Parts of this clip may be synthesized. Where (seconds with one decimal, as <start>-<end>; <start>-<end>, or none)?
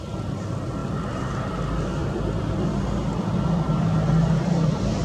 0.0-0.8; 1.5-5.0